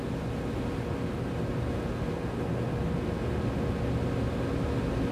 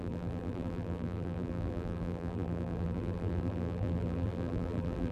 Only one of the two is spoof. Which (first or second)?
second